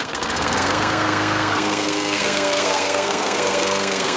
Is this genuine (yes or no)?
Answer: no